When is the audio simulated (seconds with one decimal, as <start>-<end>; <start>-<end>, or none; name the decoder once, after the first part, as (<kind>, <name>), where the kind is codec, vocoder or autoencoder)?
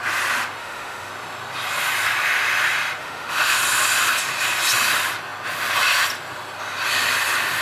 0.6-1.1 (autoencoder, DAC-VAE); 3.0-3.6